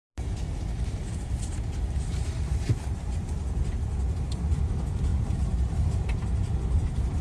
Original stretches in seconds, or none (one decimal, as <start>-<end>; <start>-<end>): 0.0-0.6; 5.1-5.7